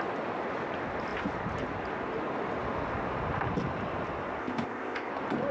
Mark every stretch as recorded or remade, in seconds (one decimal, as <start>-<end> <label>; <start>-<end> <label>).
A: 0.0-4.4 recorded; 4.4-5.1 remade; 5.1-5.5 recorded

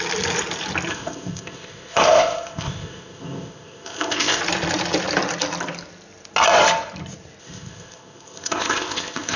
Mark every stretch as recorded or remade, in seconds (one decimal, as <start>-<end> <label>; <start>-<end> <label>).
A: 0.0-0.9 recorded; 0.9-4.4 remade; 4.4-7.4 recorded; 7.4-9.4 remade

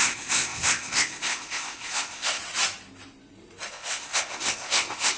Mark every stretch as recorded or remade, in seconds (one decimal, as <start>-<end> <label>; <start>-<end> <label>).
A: 0.0-2.4 remade; 2.4-3.7 recorded; 3.7-5.2 remade

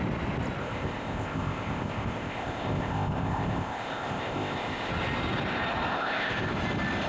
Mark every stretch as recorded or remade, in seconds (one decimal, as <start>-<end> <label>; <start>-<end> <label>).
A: 0.0-0.6 recorded; 0.6-4.9 remade; 4.9-5.9 recorded; 5.9-6.5 remade; 6.5-7.1 recorded

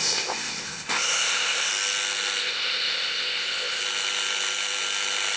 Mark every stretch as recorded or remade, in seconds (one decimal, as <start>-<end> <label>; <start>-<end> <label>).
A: 0.0-1.7 remade; 1.7-2.4 recorded; 2.4-3.8 remade; 3.8-5.4 recorded

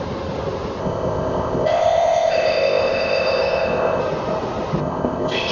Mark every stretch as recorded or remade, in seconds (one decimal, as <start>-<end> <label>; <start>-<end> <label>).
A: 0.0-0.8 recorded; 0.8-4.0 remade; 4.0-4.8 recorded; 4.8-5.5 remade